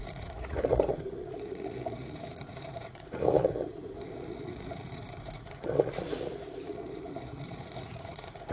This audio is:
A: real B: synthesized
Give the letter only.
B